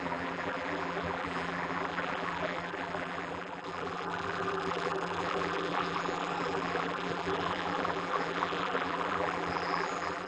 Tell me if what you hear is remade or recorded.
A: remade